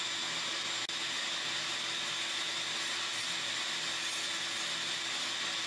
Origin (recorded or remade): recorded